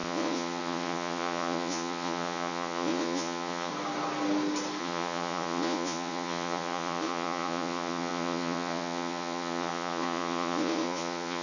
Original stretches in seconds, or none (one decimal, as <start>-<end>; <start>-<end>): 3.7-4.8